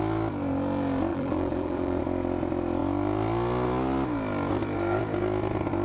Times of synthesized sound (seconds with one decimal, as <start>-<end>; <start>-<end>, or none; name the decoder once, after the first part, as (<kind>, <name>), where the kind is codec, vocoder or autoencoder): 1.1-2.0 (vocoder, BigVGAN v2)